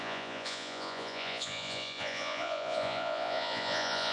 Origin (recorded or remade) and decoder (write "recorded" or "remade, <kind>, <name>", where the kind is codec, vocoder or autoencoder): remade, vocoder, Vocos